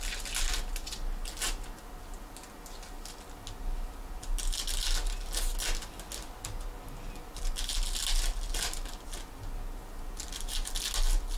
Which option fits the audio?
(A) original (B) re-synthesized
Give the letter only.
A